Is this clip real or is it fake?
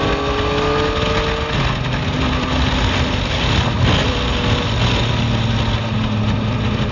real